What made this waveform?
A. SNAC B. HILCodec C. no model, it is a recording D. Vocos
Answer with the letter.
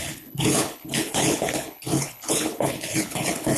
B